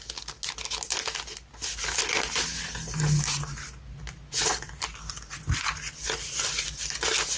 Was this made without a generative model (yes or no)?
yes